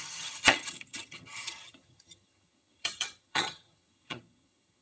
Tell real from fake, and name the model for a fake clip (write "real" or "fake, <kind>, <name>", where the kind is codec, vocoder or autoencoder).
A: fake, vocoder, HiFi-GAN